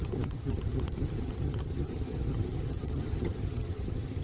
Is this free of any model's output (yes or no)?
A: no